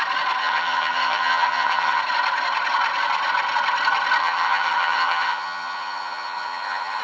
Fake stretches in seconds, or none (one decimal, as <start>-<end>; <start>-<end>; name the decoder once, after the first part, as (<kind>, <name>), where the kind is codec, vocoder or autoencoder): 0.4-2.0 (vocoder, HiFi-GAN); 4.2-7.0